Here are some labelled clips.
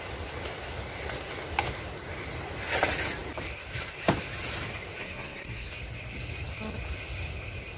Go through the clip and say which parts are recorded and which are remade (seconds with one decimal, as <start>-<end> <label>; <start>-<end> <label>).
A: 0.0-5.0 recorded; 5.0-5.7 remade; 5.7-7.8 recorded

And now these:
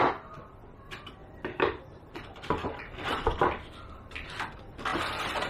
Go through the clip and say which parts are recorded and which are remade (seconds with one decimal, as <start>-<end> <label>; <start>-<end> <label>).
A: 0.0-1.2 recorded; 1.2-3.4 remade; 3.4-4.9 recorded; 4.9-5.5 remade

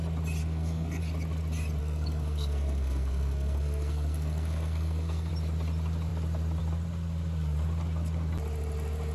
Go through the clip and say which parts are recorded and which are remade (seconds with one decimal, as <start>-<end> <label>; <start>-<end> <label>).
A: 0.0-0.4 recorded; 0.4-1.0 remade; 1.0-1.8 recorded; 1.8-5.3 remade; 5.3-9.1 recorded

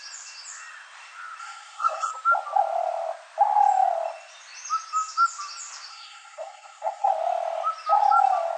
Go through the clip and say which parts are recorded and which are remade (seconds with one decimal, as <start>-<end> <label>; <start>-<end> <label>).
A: 0.0-1.4 recorded; 1.4-2.1 remade; 2.1-5.9 recorded; 5.9-7.1 remade; 7.1-8.6 recorded